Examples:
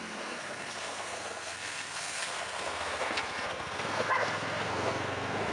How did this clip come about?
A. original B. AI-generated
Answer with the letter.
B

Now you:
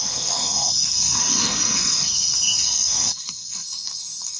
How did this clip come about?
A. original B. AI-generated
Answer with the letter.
B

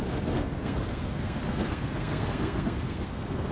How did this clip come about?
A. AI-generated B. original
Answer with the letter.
A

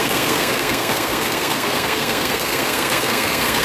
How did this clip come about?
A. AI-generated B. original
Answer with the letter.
A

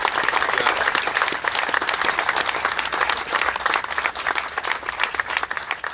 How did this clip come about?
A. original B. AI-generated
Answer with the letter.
A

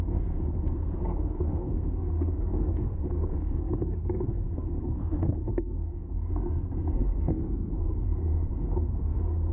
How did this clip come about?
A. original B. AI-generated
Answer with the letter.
B